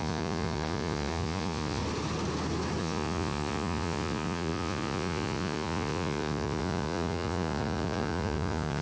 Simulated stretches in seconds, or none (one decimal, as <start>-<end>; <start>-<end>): 0.0-1.8; 2.8-8.8